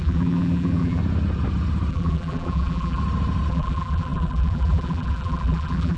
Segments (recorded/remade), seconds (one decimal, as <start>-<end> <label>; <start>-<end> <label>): 0.0-1.0 remade; 1.0-1.9 recorded; 1.9-3.0 remade; 3.0-3.5 recorded; 3.5-6.0 remade